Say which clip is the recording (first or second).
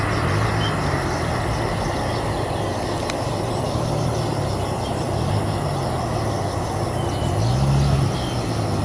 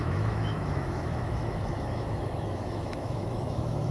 first